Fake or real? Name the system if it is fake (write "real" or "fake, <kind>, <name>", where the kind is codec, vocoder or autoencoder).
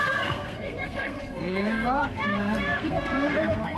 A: fake, codec, SNAC